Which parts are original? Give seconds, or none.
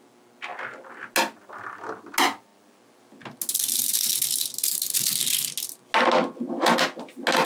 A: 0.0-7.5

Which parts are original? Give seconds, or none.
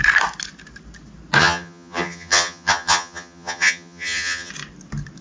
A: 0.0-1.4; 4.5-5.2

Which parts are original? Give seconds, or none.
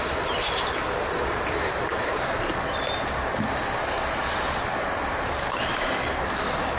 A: 0.0-6.8